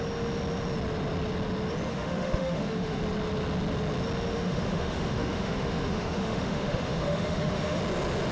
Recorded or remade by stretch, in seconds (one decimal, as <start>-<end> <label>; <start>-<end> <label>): 0.0-1.9 recorded; 1.9-3.0 remade; 3.0-4.3 recorded; 4.3-7.8 remade; 7.8-8.3 recorded